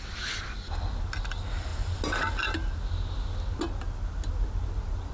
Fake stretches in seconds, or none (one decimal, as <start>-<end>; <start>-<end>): none